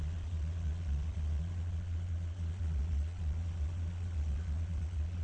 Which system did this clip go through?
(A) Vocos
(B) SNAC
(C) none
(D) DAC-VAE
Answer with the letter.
A